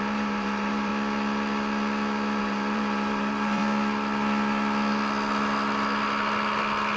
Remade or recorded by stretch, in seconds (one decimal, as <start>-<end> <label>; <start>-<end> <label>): 0.0-0.9 remade; 0.9-2.4 recorded; 2.4-3.6 remade; 3.6-7.0 recorded